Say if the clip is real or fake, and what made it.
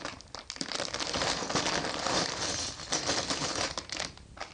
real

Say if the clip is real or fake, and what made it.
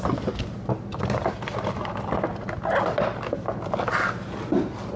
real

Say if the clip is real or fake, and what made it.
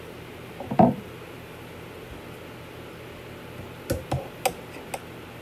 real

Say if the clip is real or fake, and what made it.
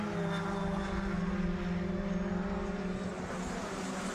real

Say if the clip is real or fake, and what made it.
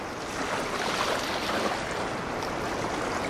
real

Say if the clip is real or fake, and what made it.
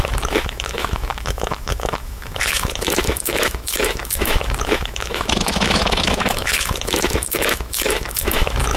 fake, autoencoder, DAC-VAE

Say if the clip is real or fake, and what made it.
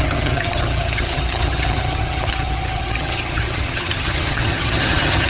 fake, vocoder, HiFi-GAN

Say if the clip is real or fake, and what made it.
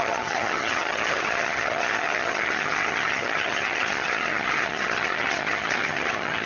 fake, vocoder, HiFi-GAN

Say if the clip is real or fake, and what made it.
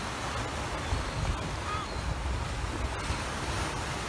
real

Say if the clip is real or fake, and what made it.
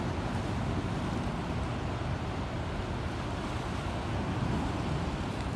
real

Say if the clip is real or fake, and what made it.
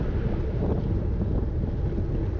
real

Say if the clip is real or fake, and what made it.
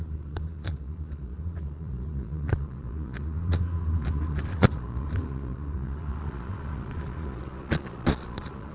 fake, vocoder, Vocos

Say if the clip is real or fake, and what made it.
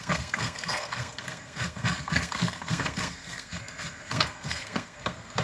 fake, codec, SNAC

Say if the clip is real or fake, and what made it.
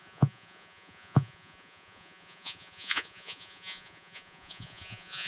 fake, vocoder, Vocos